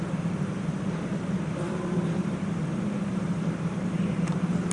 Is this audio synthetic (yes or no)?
yes